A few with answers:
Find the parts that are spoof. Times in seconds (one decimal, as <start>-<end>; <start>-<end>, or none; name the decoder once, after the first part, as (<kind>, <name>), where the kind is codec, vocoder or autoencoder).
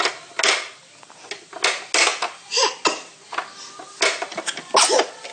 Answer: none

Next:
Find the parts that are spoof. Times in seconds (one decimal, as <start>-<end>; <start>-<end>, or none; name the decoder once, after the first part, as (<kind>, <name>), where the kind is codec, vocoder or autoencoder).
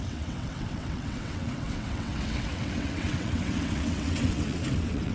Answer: 0.0-5.1 (vocoder, WaveNeXt)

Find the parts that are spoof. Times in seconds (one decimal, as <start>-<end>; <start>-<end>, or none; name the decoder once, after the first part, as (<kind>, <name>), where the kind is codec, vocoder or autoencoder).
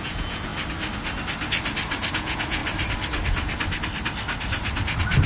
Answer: 0.0-0.5 (vocoder, Vocos); 2.1-2.6